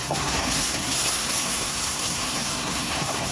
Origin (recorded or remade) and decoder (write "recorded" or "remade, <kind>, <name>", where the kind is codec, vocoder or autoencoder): remade, codec, SNAC